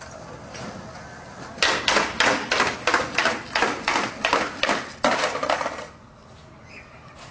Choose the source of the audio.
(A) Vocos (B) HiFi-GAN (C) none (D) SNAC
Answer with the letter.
C